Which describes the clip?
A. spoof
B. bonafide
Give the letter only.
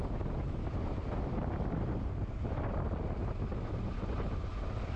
B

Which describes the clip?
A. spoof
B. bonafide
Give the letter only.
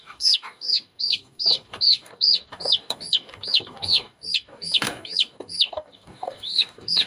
A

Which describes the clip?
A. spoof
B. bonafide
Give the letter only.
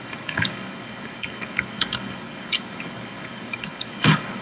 A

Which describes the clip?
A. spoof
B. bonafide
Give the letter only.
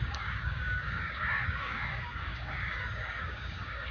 A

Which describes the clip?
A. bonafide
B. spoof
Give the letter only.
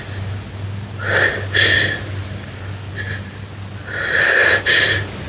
A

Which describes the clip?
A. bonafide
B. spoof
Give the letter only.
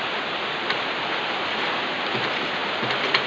A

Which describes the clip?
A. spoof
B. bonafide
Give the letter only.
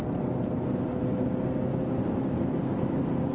B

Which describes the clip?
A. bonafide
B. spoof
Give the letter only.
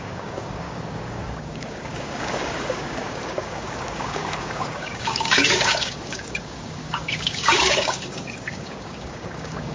B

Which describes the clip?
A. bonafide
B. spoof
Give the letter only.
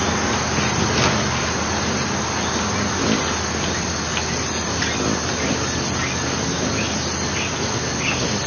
A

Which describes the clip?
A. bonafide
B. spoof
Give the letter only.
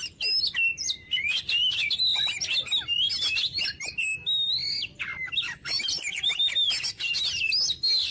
A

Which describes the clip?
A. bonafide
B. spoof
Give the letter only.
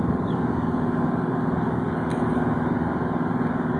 B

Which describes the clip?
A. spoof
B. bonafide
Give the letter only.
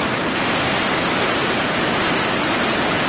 B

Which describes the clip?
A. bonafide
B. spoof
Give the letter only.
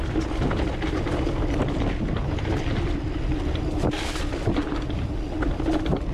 A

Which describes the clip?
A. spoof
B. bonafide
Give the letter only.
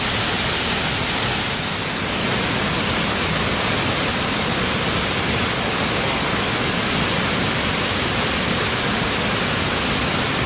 B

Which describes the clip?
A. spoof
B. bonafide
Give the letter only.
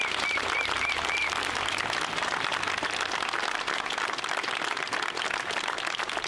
B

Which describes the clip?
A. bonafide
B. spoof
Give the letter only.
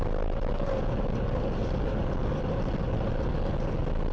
A